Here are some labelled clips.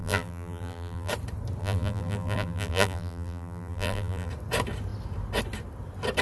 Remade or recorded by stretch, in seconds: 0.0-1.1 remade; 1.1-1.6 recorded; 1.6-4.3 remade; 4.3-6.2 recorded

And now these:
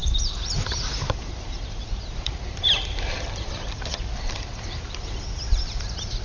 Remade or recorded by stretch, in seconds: 0.0-3.7 remade; 3.7-6.2 recorded

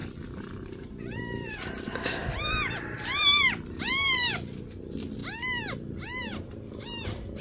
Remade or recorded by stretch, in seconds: 0.0-5.2 remade; 5.2-6.5 recorded; 6.5-7.4 remade

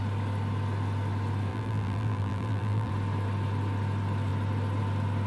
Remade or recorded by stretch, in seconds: 0.0-1.5 recorded; 1.5-2.9 remade; 2.9-5.3 recorded

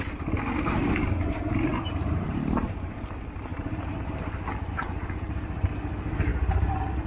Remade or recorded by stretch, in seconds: 0.0-1.7 recorded; 1.7-2.7 remade; 2.7-6.3 recorded; 6.3-7.1 remade